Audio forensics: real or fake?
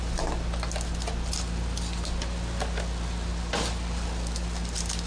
real